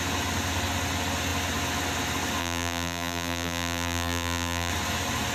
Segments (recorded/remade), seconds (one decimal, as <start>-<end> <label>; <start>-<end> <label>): 0.0-2.4 recorded; 2.4-4.7 remade; 4.7-5.3 recorded